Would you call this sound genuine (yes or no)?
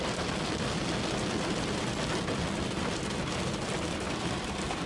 yes